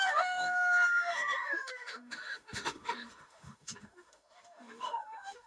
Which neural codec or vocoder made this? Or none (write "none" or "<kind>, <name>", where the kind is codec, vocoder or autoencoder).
autoencoder, DAC-VAE